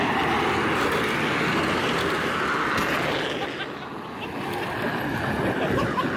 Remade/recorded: recorded